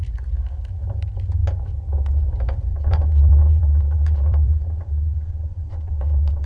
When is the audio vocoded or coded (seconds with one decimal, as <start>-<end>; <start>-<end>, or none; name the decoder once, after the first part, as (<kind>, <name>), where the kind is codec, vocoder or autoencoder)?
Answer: 2.7-6.5 (vocoder, WaveNeXt)